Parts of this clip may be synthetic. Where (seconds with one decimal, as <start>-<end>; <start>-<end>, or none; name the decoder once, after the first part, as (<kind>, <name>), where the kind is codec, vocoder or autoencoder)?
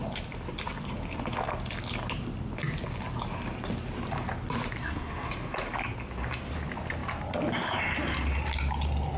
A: 4.8-5.3 (codec, SNAC)